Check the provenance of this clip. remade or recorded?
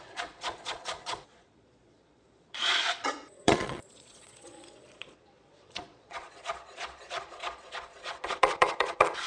remade